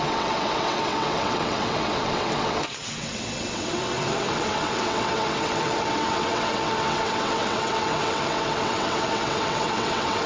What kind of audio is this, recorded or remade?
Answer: remade